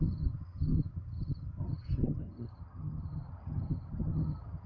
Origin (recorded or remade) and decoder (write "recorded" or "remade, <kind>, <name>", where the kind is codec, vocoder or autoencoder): remade, vocoder, HiFi-GAN